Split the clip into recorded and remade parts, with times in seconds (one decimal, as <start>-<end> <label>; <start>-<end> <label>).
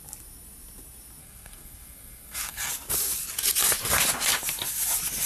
0.0-1.2 recorded; 1.2-2.7 remade; 2.7-5.3 recorded